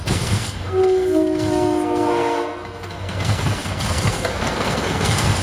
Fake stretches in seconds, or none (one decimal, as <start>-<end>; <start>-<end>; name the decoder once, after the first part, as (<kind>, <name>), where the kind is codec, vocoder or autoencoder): 0.0-5.4 (codec, SNAC)